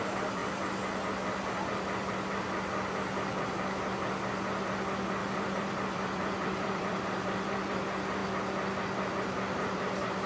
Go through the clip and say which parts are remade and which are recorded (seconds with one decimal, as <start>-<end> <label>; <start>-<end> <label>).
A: 0.0-5.2 recorded; 5.2-7.7 remade; 7.7-10.3 recorded